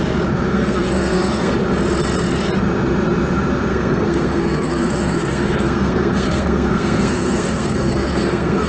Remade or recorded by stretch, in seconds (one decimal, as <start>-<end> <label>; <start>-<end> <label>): 0.0-0.5 recorded; 0.5-1.5 remade; 1.5-3.7 recorded; 3.7-8.7 remade